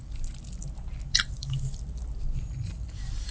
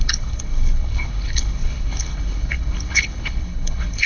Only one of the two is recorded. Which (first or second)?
first